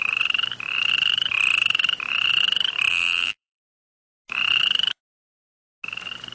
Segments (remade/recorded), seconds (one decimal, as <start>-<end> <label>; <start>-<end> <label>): 0.0-2.9 recorded; 2.9-3.6 remade; 3.6-6.3 recorded